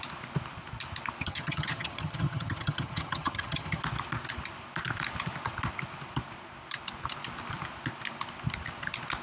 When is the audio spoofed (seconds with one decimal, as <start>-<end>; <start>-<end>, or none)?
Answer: 1.2-3.8